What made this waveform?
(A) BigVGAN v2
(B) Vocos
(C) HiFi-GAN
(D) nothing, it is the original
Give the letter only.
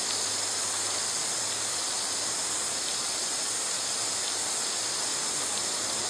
D